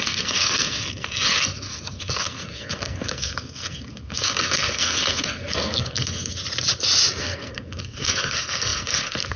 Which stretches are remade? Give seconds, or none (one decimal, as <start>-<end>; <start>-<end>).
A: 0.0-6.4; 7.2-9.4